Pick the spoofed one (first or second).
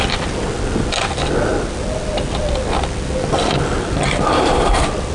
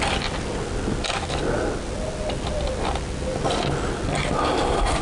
first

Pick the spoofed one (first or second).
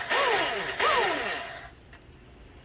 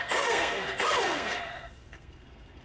second